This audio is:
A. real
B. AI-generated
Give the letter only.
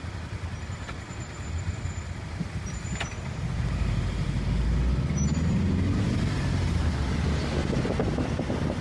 A